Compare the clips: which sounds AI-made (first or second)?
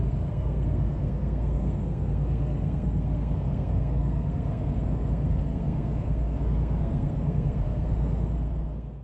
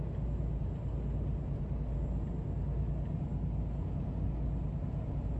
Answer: first